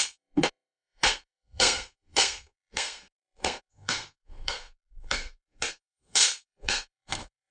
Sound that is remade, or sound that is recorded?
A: remade